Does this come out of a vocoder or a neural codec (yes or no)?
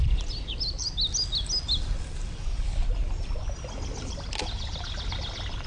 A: no